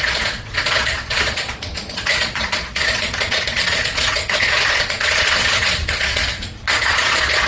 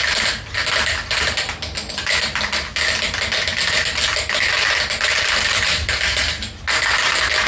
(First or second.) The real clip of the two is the second